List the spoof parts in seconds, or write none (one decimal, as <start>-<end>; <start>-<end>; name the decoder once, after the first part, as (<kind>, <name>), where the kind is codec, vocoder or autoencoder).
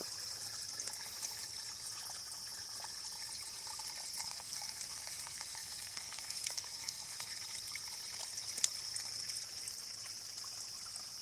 4.2-7.3 (codec, SNAC)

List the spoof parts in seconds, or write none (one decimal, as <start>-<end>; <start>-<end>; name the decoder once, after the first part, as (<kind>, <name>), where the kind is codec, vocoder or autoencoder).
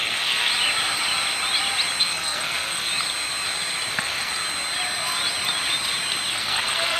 0.0-0.5 (codec, SNAC); 2.0-2.9; 3.9-4.3; 6.3-7.0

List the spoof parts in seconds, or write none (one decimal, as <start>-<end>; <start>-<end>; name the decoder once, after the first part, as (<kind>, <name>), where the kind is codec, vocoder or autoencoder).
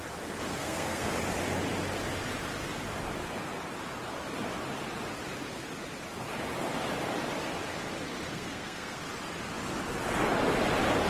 0.5-1.1 (codec, SNAC); 8.3-9.0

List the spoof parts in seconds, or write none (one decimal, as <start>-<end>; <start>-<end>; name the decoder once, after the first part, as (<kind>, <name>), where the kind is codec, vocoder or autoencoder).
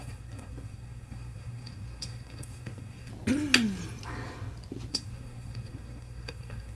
0.0-3.1 (codec, SNAC); 4.9-6.7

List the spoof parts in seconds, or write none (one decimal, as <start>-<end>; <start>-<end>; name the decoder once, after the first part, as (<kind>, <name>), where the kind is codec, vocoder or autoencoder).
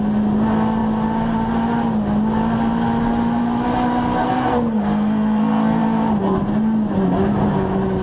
4.2-5.8 (codec, SNAC)